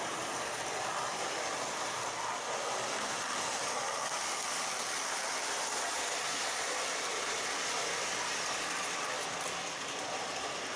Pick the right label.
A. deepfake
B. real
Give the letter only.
B